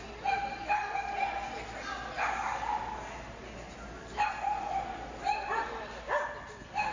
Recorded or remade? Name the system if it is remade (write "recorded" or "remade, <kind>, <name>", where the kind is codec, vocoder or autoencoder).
recorded